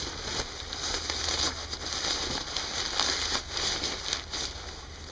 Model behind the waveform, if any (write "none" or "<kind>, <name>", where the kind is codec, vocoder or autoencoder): none